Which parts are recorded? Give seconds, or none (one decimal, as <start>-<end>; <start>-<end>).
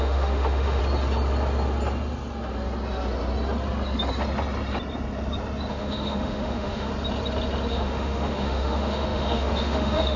0.8-5.7; 6.9-7.7